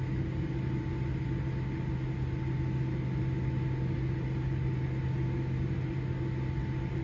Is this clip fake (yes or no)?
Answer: no